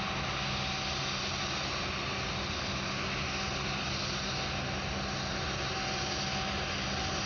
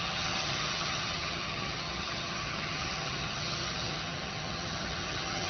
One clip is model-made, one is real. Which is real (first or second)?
first